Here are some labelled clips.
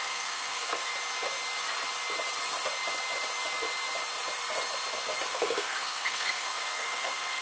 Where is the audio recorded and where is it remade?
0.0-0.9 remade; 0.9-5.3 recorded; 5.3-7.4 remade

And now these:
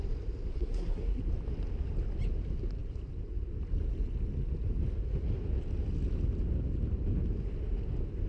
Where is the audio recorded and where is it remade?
0.0-0.5 recorded; 0.5-1.2 remade; 1.2-8.3 recorded